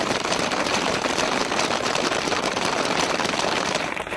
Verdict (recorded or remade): remade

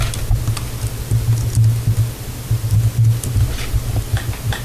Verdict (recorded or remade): recorded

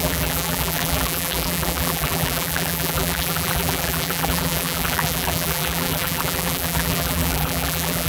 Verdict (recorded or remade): remade